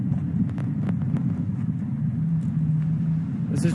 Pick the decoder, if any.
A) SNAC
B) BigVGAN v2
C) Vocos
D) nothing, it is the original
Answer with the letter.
D